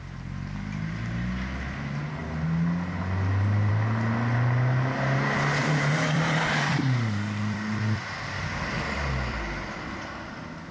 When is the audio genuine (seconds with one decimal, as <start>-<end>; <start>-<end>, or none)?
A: 0.0-5.6